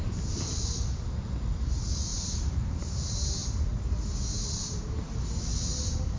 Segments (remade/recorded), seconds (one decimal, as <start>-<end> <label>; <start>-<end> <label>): 0.0-2.1 recorded; 2.1-2.8 remade; 2.8-3.4 recorded; 3.4-5.1 remade; 5.1-6.2 recorded